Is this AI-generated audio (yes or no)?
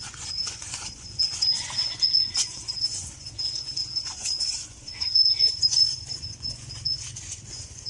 yes